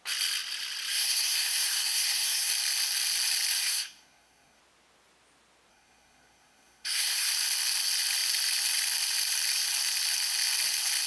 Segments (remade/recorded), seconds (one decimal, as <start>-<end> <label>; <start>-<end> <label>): 0.0-0.9 recorded; 0.9-2.5 remade; 2.5-3.6 recorded; 3.6-4.6 remade; 4.6-5.7 recorded; 5.7-7.3 remade; 7.3-11.1 recorded